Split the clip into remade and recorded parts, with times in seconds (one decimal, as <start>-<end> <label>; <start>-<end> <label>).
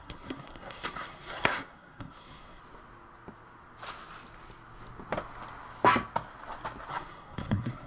0.0-2.6 remade; 2.6-6.9 recorded; 6.9-7.9 remade